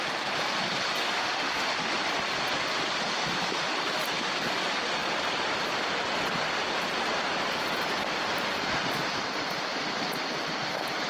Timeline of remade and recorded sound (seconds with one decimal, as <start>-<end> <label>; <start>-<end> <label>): 0.0-1.0 recorded; 1.0-1.7 remade; 1.7-11.1 recorded